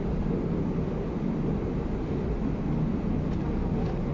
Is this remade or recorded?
recorded